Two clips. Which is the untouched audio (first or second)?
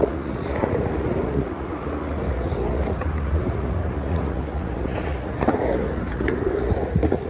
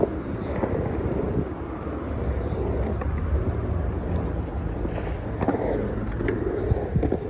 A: second